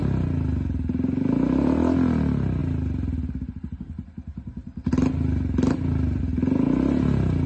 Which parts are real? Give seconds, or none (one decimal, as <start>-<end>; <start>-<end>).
0.0-7.5

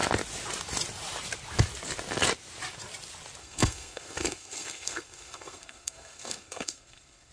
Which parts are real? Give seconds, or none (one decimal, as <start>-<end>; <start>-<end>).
0.0-3.4

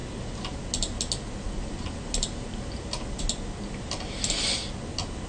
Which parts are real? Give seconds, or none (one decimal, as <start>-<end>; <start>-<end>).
0.0-5.3